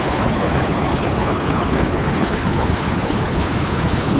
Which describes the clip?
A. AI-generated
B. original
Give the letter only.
A